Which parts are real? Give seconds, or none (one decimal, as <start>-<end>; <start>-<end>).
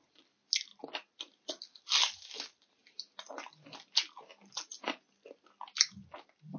0.0-6.6